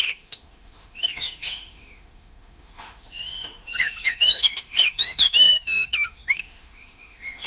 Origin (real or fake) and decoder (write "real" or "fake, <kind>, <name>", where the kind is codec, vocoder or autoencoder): fake, autoencoder, DAC-VAE